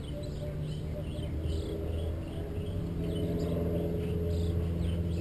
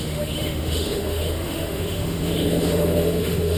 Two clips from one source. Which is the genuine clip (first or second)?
first